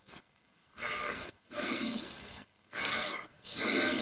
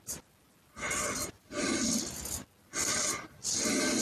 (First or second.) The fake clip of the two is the first